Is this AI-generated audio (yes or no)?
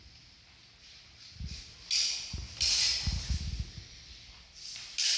no